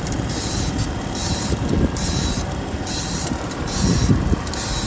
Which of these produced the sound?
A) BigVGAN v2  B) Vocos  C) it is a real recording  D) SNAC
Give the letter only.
A